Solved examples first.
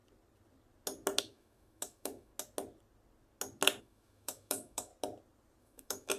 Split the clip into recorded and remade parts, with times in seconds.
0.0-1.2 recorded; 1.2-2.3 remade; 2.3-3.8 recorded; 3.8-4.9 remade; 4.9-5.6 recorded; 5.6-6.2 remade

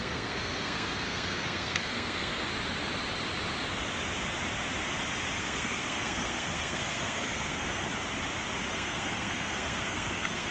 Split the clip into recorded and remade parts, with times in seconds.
0.0-2.5 remade; 2.5-5.4 recorded; 5.4-7.9 remade; 7.9-8.7 recorded; 8.7-10.5 remade

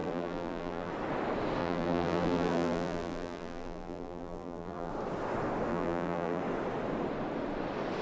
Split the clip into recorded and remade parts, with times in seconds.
0.0-0.9 remade; 0.9-1.6 recorded; 1.6-4.9 remade; 4.9-5.7 recorded; 5.7-6.4 remade; 6.4-8.0 recorded

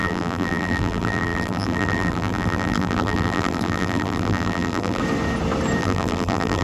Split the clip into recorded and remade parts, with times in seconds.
0.0-5.0 remade; 5.0-5.8 recorded; 5.8-6.6 remade

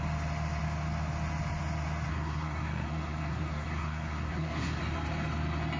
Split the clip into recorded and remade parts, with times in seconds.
0.0-2.1 recorded; 2.1-4.8 remade; 4.8-5.8 recorded

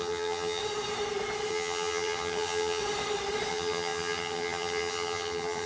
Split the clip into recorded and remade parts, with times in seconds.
0.0-0.6 remade; 0.6-1.5 recorded; 1.5-2.8 remade; 2.8-3.5 recorded; 3.5-5.7 remade